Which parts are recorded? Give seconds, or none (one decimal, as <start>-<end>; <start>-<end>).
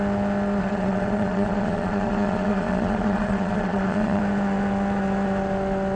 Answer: 0.0-0.6; 4.2-6.0